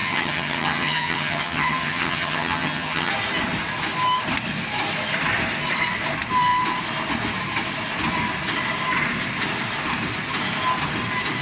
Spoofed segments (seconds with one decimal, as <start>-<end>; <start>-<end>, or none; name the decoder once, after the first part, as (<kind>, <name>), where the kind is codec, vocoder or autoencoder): 0.0-3.1 (vocoder, HiFi-GAN)